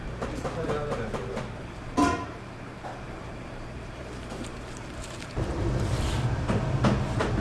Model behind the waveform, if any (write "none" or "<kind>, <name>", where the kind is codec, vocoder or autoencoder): vocoder, BigVGAN v2